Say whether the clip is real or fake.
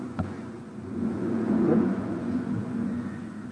fake